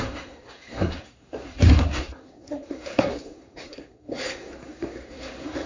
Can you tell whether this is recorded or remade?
remade